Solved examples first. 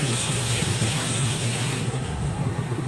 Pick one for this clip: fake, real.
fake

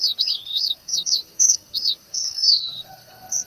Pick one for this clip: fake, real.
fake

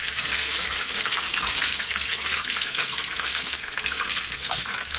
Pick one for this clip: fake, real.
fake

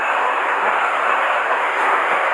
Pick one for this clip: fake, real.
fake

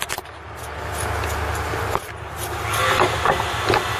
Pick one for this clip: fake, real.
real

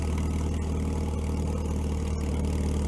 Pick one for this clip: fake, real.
real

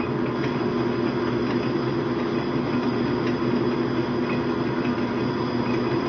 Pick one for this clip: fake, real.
real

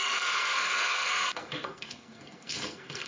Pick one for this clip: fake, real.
fake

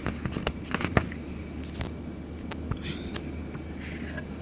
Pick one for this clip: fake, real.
real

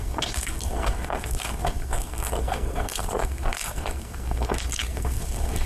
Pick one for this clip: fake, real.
fake